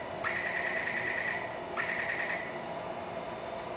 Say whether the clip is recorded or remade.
recorded